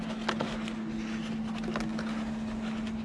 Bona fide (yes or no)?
yes